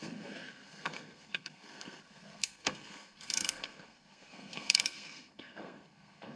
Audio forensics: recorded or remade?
remade